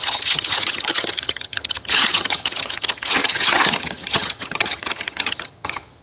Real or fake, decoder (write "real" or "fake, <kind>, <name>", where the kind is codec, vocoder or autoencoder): fake, vocoder, HiFi-GAN